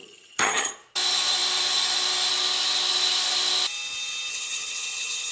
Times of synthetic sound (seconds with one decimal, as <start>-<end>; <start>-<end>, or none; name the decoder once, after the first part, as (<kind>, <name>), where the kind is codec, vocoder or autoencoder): 0.0-0.7 (vocoder, HiFi-GAN); 4.3-5.3